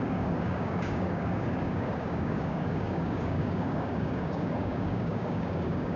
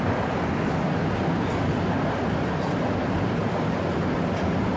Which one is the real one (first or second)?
second